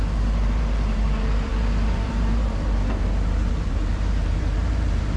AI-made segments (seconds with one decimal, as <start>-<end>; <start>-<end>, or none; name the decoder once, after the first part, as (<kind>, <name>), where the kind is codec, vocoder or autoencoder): 0.0-5.2 (vocoder, BigVGAN v2)